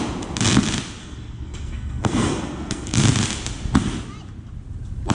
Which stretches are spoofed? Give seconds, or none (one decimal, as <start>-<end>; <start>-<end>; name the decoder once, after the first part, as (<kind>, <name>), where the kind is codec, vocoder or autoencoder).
1.0-3.0 (codec, SNAC)